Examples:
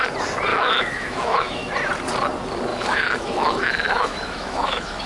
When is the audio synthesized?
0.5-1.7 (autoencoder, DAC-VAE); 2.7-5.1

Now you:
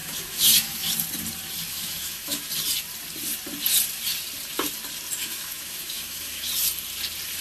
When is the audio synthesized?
0.0-0.9 (autoencoder, DAC-VAE); 1.7-2.4; 5.2-6.5

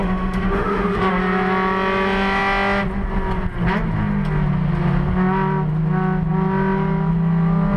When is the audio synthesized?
0.0-1.1 (autoencoder, DAC-VAE)

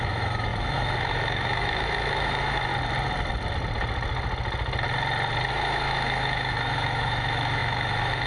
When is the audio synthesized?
0.0-2.7 (autoencoder, DAC-VAE); 5.5-8.3

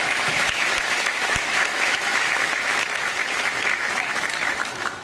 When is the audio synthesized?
0.0-5.0 (autoencoder, DAC-VAE)